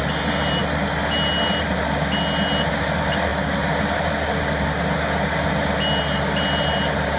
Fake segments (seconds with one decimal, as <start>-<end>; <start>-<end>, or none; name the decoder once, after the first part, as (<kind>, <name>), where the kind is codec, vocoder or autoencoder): none